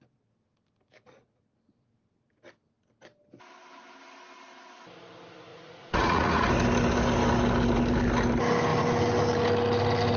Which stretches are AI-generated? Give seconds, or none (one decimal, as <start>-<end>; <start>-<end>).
5.5-6.5